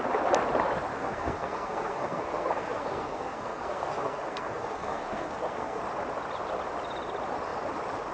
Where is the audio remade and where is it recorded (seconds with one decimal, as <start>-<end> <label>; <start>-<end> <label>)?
0.0-1.0 recorded; 1.0-5.8 remade; 5.8-8.1 recorded